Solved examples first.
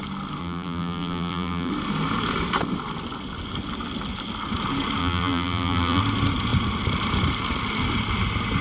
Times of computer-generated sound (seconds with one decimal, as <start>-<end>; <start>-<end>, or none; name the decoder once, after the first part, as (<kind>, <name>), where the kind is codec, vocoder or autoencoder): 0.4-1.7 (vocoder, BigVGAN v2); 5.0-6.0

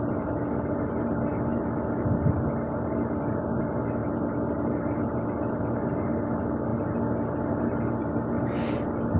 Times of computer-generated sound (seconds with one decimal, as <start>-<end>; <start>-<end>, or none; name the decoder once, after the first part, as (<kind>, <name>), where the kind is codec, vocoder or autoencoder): none

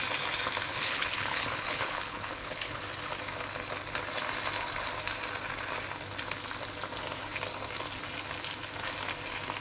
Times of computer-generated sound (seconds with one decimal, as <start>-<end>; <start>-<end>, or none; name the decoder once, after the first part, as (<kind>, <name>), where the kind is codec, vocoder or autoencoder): 0.7-2.8 (codec, HILCodec)

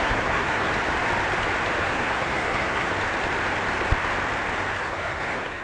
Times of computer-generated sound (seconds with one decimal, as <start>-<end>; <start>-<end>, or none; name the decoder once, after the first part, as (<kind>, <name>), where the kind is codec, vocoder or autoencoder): 0.0-0.7 (codec, SNAC); 1.8-2.9; 4.8-5.6